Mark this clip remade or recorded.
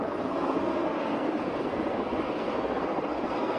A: remade